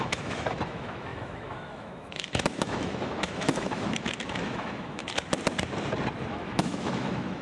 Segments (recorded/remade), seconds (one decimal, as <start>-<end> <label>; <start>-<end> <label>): 0.0-5.0 remade; 5.0-6.3 recorded; 6.3-7.4 remade